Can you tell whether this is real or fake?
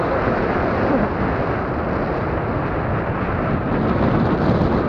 real